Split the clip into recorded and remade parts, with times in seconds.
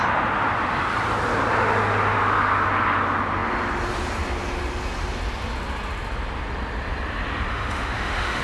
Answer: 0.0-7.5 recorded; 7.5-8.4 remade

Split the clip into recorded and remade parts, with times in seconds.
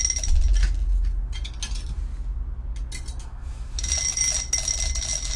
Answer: 0.0-3.2 recorded; 3.2-3.8 remade; 3.8-5.4 recorded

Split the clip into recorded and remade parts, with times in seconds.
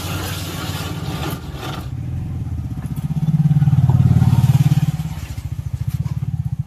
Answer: 0.0-6.7 recorded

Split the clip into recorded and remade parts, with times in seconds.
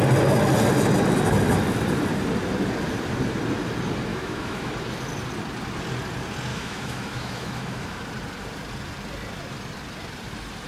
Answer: 0.0-4.1 recorded; 4.1-4.7 remade; 4.7-6.5 recorded; 6.5-8.0 remade; 8.0-10.7 recorded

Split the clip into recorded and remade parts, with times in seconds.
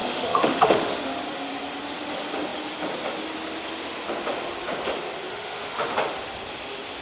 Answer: 0.0-1.2 remade; 1.2-5.3 recorded; 5.3-6.1 remade; 6.1-7.0 recorded